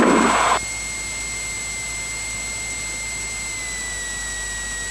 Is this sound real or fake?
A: real